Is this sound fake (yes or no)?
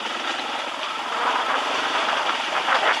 yes